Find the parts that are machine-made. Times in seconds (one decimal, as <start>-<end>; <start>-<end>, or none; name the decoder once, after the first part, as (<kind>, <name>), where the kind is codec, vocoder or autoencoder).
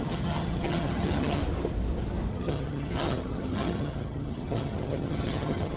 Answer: 0.0-1.4 (vocoder, HiFi-GAN); 2.3-5.8